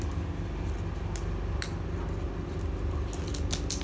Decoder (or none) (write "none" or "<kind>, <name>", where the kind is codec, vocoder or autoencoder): none